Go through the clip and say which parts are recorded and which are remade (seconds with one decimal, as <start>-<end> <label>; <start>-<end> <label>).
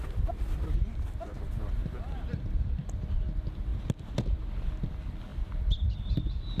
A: 0.0-1.8 recorded; 1.8-3.2 remade; 3.2-3.7 recorded; 3.7-4.5 remade; 4.5-6.6 recorded